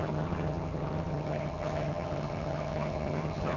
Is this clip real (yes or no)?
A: no